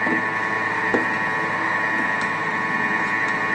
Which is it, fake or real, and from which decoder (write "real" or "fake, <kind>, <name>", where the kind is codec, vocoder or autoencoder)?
real